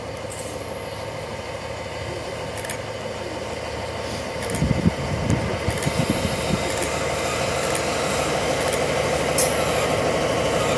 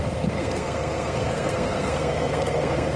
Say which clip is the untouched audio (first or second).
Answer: first